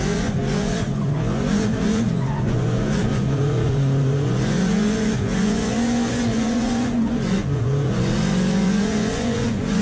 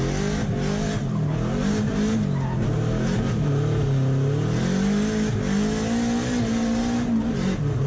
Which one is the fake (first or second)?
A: first